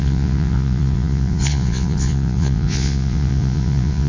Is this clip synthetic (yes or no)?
yes